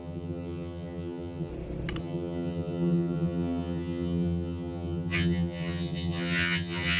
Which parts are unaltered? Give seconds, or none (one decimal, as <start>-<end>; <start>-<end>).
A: 1.5-2.0